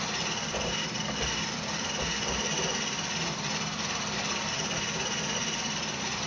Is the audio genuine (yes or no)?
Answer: yes